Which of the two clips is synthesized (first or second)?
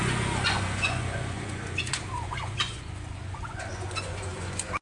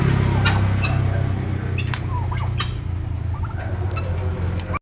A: first